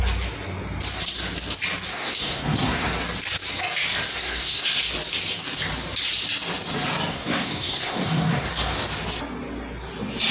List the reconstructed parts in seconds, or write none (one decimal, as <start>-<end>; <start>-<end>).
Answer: 1.9-2.9; 4.1-4.8; 7.1-8.5